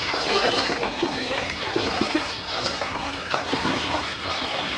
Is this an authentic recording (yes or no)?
no